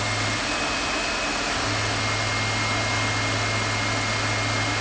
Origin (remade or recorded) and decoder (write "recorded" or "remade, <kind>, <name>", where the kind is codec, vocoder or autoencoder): recorded